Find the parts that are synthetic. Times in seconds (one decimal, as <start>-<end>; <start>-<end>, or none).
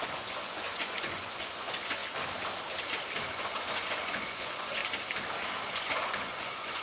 0.0-2.0; 3.3-4.8; 5.7-6.8